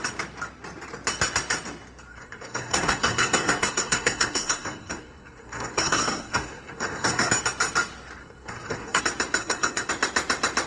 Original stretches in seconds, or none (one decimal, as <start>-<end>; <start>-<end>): 0.0-2.1; 7.3-8.2; 9.0-9.4; 9.9-10.7